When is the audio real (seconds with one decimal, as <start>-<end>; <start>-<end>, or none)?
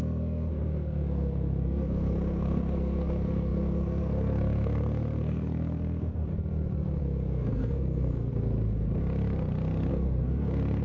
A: 6.3-7.0; 8.3-9.9